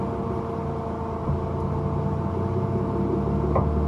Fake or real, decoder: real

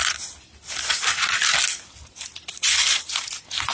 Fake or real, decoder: real